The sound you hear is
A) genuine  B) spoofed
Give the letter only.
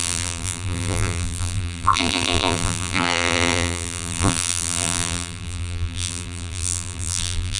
B